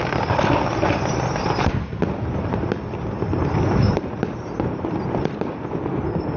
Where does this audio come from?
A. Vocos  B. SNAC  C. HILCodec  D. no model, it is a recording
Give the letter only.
D